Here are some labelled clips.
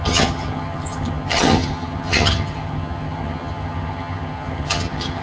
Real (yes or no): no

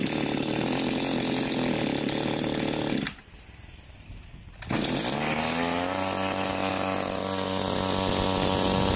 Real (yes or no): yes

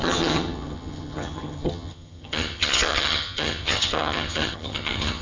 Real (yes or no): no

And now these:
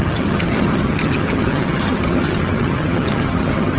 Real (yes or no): no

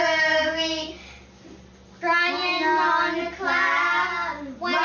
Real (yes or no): yes